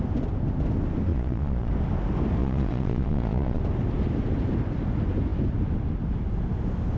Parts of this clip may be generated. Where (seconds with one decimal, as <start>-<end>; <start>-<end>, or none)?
1.1-1.7; 2.4-3.6